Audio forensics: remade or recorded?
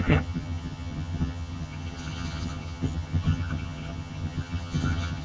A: remade